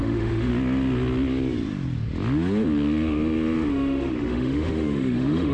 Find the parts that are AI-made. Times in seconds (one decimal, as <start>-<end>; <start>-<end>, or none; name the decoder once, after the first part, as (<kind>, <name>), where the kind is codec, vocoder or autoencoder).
0.0-0.5 (autoencoder, DAC-VAE); 3.7-5.5